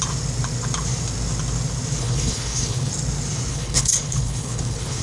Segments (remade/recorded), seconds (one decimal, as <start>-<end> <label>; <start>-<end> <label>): 0.0-2.0 recorded; 2.0-2.9 remade; 2.9-3.5 recorded; 3.5-5.0 remade